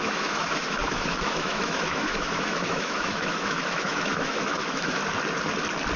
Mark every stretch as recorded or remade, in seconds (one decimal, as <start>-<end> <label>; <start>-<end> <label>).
0.0-5.0 remade; 5.0-6.0 recorded